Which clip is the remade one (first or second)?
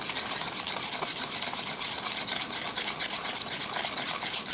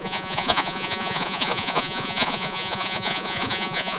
second